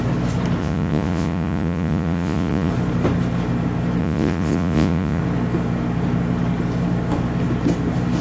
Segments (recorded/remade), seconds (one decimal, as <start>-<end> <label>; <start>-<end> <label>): 0.0-0.6 recorded; 0.6-2.7 remade; 2.7-4.0 recorded; 4.0-5.2 remade; 5.2-8.2 recorded